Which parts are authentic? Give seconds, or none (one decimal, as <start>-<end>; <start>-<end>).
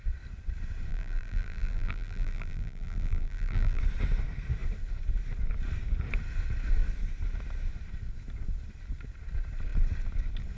0.0-0.9; 3.8-10.6